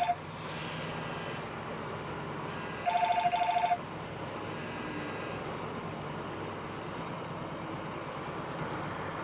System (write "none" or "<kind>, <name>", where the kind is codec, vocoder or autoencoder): none